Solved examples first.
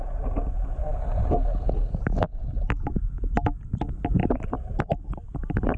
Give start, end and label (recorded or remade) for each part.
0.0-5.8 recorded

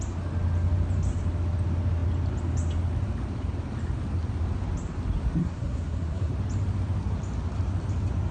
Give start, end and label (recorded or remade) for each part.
0.0-5.4 recorded; 5.4-6.3 remade; 6.3-8.3 recorded